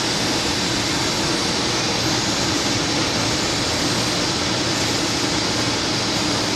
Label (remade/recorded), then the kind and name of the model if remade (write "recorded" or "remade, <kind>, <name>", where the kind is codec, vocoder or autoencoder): recorded